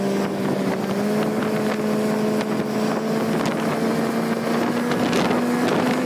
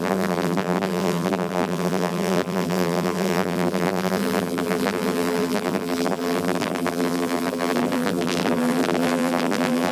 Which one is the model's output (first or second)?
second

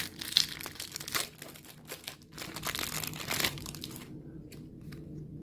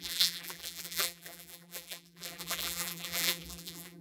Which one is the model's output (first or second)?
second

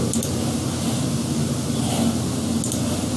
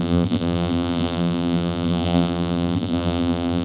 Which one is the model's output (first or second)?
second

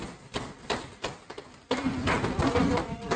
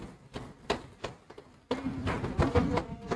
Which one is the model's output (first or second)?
first